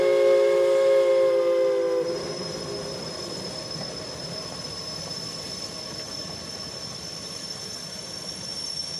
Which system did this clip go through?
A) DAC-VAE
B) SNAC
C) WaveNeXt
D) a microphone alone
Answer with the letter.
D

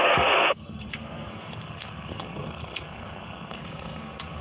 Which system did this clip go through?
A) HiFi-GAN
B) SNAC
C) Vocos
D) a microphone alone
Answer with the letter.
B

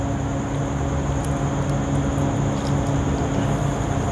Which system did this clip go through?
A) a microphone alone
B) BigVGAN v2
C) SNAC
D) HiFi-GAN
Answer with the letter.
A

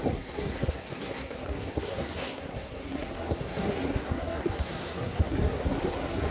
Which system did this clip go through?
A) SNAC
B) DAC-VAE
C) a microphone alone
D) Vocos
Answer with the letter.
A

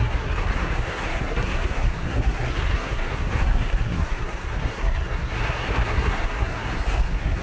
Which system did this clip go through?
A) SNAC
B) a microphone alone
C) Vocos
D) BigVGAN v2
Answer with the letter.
A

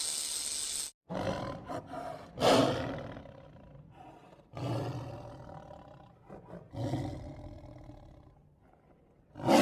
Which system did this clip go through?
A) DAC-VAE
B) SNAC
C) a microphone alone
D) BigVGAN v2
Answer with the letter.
C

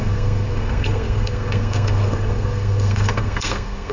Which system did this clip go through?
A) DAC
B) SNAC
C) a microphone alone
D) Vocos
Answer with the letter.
B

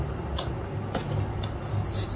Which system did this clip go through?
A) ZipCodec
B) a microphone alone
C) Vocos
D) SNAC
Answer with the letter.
B